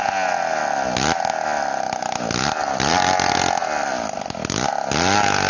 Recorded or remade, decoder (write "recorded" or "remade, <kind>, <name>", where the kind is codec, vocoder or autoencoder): recorded